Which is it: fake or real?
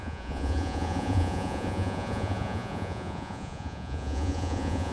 fake